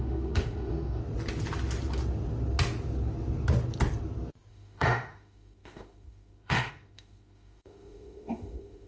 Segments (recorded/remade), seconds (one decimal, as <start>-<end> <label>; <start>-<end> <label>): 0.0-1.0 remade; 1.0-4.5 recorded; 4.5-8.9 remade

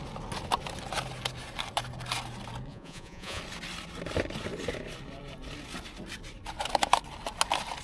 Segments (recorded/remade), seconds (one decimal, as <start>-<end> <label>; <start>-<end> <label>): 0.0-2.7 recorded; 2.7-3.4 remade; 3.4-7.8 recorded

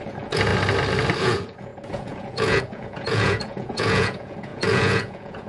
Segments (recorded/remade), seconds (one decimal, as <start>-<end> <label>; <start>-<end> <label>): 0.0-0.5 remade; 0.5-1.2 recorded; 1.2-5.5 remade

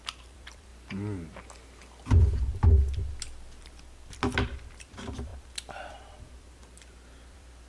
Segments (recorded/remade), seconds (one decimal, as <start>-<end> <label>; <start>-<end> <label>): 0.0-0.7 remade; 0.7-3.6 recorded; 3.6-7.7 remade

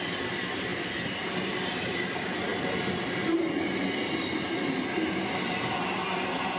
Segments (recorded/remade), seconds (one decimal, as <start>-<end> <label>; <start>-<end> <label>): 0.0-6.6 recorded

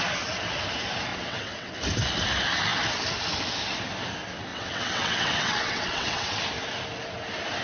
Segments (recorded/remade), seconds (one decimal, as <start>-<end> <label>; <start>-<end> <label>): 0.0-1.1 recorded; 1.1-1.7 remade; 1.7-4.5 recorded; 4.5-6.4 remade; 6.4-7.6 recorded

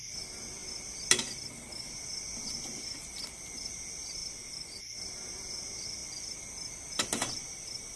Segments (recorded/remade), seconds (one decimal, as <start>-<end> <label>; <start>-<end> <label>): 0.0-8.0 recorded

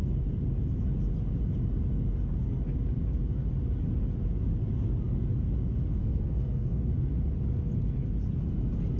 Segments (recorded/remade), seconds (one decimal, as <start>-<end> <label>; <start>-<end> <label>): 0.0-6.0 recorded; 6.0-6.9 remade; 6.9-9.0 recorded